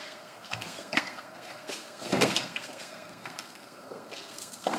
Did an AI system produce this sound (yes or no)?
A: yes